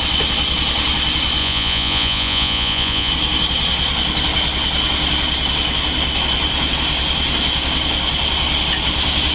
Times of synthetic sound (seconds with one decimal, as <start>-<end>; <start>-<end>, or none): 1.4-3.1